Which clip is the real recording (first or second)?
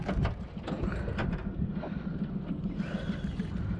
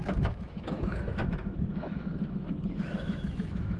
first